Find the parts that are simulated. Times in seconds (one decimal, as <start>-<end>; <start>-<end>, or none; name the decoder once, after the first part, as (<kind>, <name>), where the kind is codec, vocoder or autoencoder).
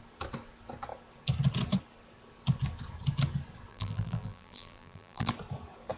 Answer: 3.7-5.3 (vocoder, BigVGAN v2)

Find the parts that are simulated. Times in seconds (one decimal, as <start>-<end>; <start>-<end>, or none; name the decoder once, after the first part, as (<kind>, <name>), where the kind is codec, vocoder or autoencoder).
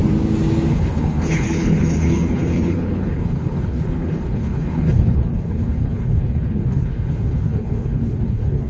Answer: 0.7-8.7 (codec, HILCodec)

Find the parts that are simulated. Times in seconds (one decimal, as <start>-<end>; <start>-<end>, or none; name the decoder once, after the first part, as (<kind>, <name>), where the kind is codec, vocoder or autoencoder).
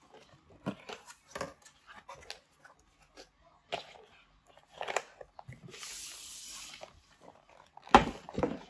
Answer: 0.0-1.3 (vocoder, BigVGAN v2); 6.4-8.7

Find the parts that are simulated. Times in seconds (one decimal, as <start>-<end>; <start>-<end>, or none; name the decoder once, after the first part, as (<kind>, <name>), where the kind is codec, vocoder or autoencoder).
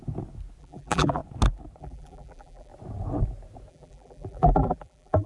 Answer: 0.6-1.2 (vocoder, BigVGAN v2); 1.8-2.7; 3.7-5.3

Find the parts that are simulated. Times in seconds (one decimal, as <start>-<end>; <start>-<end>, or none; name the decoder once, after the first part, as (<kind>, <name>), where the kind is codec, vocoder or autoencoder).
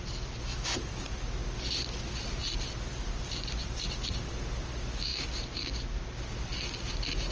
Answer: none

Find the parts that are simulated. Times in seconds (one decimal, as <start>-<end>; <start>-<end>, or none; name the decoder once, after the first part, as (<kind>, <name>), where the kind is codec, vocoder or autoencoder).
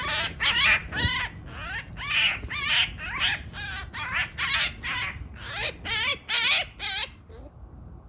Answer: none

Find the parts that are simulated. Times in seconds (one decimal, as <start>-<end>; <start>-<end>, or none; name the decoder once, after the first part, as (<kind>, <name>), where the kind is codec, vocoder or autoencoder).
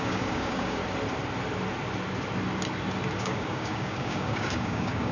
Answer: 0.0-0.8 (codec, DAC); 3.2-5.1